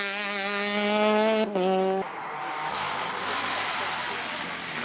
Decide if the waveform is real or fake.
real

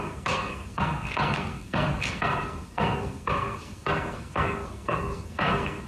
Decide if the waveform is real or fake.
fake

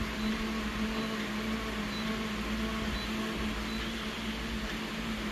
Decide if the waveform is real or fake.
real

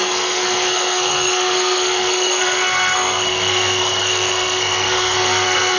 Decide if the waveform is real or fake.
fake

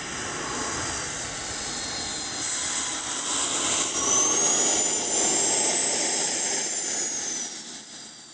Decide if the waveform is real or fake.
real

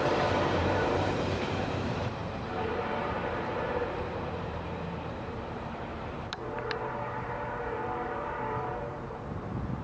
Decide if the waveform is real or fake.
fake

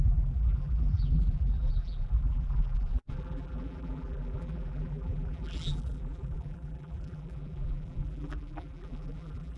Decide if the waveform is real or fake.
fake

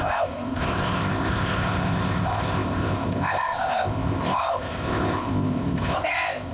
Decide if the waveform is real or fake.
fake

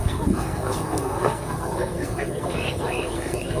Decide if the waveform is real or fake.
fake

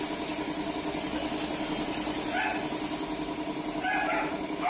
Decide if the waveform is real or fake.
real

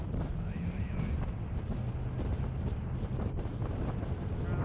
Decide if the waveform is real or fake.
real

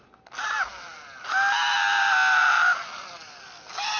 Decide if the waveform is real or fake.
real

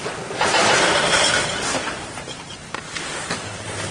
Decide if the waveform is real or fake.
fake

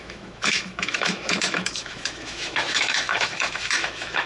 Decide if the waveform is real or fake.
fake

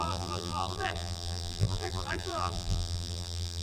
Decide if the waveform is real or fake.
fake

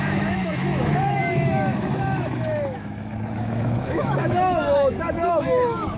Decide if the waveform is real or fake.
fake